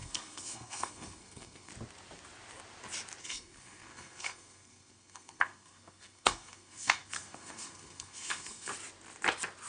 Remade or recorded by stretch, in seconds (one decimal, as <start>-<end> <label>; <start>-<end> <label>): 0.0-1.7 remade; 1.7-3.2 recorded; 3.2-8.7 remade; 8.7-9.7 recorded